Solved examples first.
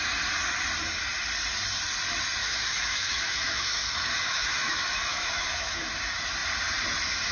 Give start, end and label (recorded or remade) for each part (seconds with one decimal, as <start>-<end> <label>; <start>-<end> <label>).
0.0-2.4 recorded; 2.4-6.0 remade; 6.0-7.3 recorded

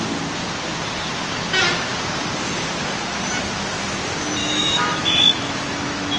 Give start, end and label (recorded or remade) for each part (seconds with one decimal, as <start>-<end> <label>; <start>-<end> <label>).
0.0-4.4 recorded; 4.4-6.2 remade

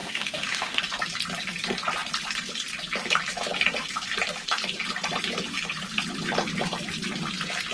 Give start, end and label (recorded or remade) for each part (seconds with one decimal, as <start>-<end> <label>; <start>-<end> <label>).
0.0-0.8 remade; 0.8-7.7 recorded